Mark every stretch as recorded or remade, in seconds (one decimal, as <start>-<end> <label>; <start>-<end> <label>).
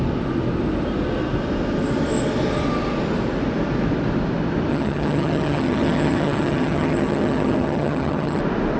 0.0-4.7 recorded; 4.7-8.4 remade; 8.4-8.8 recorded